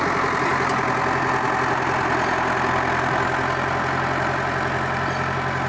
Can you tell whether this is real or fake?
real